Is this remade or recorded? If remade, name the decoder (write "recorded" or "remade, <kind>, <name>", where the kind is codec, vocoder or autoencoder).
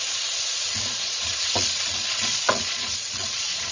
remade, vocoder, Vocos